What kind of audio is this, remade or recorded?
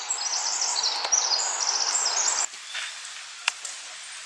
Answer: recorded